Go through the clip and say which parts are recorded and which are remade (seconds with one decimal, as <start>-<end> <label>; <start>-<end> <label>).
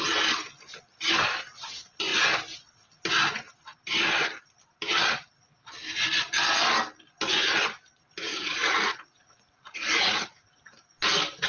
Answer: 0.0-8.3 recorded; 8.3-10.6 remade; 10.6-11.5 recorded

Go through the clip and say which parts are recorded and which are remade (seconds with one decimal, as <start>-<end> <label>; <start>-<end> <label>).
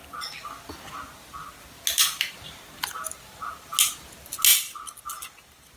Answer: 0.0-5.8 recorded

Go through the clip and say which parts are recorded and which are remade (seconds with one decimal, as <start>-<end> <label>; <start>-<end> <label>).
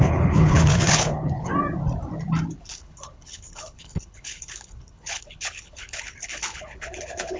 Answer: 0.0-1.5 remade; 1.5-2.6 recorded; 2.6-7.4 remade